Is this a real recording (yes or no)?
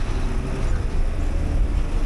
yes